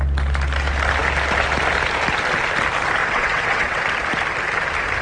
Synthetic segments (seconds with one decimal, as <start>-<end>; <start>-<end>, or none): 3.0-3.8